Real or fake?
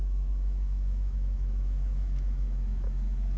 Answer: fake